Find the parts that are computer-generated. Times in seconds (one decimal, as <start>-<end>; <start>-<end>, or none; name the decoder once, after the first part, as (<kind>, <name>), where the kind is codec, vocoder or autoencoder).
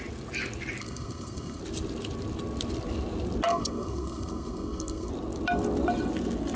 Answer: 0.8-1.6 (codec, SNAC); 3.5-5.1